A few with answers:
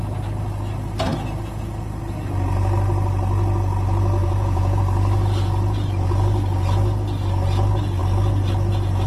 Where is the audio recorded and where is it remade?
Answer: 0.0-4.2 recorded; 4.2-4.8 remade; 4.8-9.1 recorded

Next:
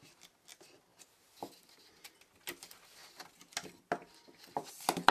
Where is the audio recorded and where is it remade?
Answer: 0.0-5.1 recorded

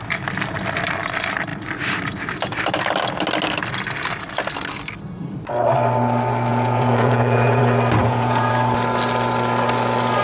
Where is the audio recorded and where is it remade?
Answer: 0.0-6.5 recorded; 6.5-7.6 remade; 7.6-8.0 recorded; 8.0-8.5 remade; 8.5-10.2 recorded

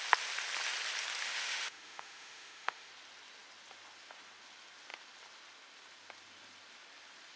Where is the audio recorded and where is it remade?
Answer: 0.0-1.2 recorded; 1.2-2.9 remade; 2.9-7.4 recorded

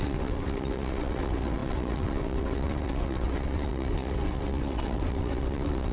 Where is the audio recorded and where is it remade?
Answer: 0.0-5.9 remade